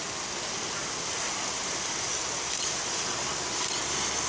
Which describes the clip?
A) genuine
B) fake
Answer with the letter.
A